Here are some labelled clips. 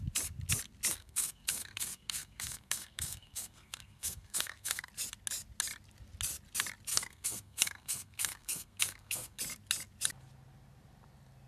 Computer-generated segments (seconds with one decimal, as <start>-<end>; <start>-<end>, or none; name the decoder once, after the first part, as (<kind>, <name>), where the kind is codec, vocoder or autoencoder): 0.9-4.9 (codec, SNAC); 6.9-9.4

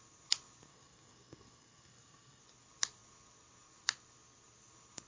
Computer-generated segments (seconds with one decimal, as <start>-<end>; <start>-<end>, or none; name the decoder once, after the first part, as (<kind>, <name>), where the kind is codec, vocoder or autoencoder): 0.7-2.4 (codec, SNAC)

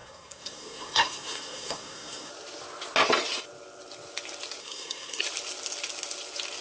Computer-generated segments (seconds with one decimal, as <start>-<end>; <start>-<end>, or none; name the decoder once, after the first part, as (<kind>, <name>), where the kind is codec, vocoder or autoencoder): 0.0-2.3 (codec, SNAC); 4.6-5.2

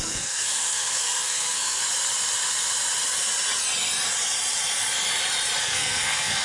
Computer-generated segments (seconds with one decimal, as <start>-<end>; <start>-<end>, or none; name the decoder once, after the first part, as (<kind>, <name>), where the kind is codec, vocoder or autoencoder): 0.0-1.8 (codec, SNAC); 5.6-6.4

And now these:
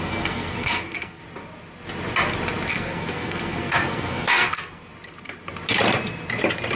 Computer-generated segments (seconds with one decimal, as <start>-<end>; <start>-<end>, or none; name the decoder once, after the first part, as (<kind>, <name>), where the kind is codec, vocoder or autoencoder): 0.0-1.2 (codec, SNAC); 2.7-4.9

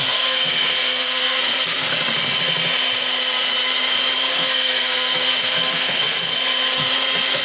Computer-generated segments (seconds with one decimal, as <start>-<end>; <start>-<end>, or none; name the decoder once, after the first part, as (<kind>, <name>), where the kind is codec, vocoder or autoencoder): 0.0-1.9 (codec, SNAC); 4.3-6.3

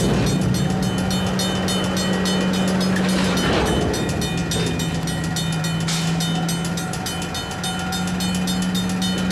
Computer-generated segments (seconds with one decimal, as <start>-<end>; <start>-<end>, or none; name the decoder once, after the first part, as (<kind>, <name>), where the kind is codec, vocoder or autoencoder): none